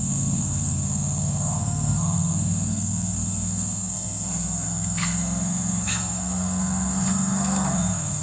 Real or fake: fake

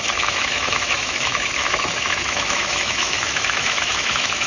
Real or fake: fake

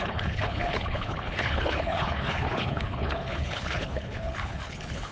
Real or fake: fake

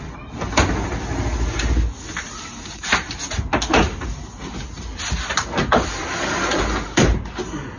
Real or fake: real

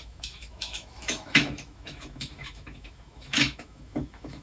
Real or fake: fake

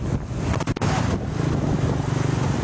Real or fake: real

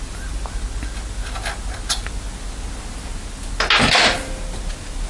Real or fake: real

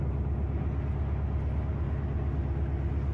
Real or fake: real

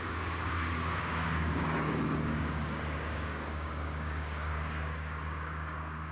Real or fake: fake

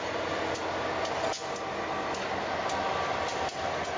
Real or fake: real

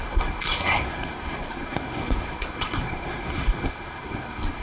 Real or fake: fake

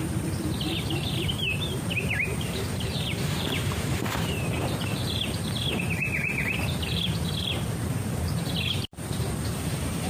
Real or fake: fake